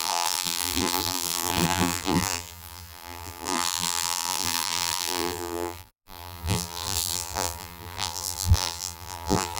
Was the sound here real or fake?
fake